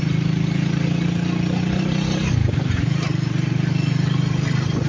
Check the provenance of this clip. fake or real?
real